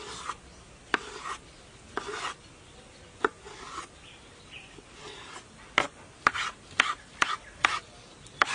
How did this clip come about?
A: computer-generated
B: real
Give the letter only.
B